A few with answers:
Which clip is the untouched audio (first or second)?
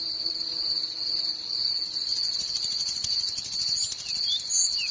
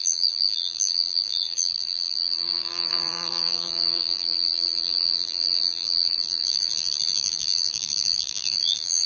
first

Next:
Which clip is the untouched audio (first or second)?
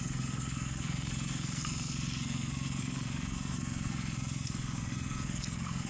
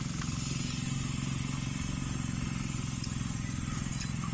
second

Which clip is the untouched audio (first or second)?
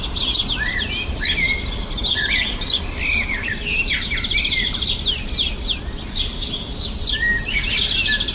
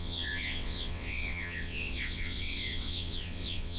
first